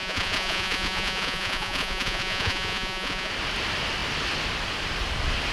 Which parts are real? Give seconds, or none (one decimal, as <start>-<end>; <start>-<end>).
3.3-5.5